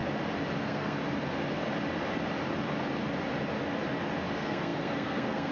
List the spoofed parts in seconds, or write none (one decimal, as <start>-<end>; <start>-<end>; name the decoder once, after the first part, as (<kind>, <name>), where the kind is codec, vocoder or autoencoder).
0.6-1.0 (codec, SNAC); 4.3-5.5